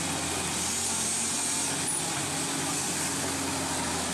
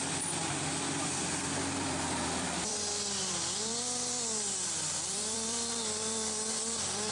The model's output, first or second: second